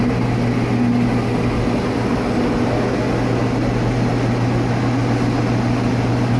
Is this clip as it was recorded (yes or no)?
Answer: yes